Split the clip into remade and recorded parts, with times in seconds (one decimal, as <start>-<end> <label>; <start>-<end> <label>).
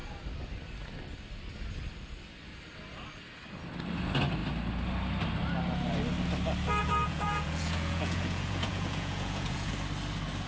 0.0-6.8 recorded; 6.8-9.7 remade; 9.7-10.5 recorded